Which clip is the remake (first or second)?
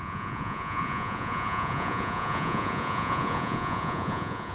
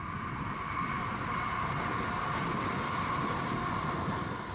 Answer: first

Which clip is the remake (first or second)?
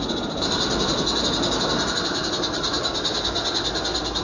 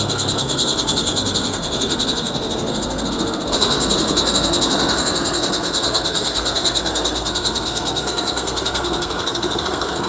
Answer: second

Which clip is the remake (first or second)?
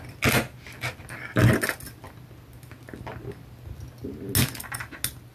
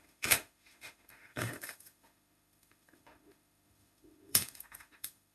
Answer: second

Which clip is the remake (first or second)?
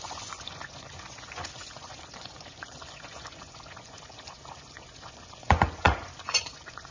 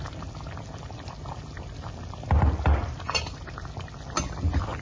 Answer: first